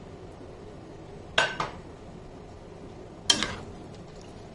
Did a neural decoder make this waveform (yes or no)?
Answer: no